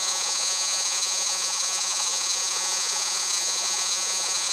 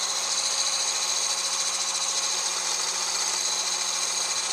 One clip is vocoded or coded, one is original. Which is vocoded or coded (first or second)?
first